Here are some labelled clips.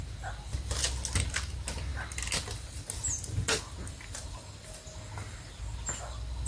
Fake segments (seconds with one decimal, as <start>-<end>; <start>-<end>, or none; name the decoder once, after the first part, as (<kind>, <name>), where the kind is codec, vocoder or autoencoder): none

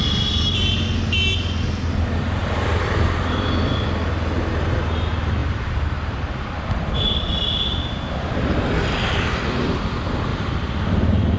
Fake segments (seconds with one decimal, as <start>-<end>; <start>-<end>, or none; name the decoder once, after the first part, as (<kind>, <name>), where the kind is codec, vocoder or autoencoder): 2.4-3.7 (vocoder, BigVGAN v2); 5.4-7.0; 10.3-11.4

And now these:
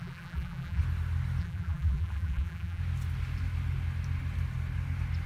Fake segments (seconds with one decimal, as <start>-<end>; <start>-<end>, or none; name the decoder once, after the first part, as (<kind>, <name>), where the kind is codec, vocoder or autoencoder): 0.0-0.8 (vocoder, BigVGAN v2); 1.4-2.8

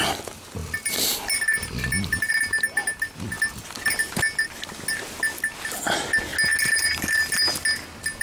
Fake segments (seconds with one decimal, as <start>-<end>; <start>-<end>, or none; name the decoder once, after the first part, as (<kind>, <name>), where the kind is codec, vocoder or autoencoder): 0.0-4.0 (vocoder, BigVGAN v2); 5.8-6.3

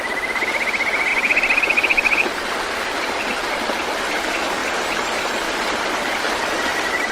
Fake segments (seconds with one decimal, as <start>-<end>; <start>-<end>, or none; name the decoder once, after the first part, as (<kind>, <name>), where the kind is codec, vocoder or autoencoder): 4.6-6.2 (vocoder, BigVGAN v2)